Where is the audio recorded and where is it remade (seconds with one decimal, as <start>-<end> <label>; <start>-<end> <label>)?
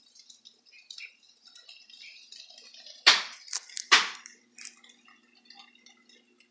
0.0-6.5 recorded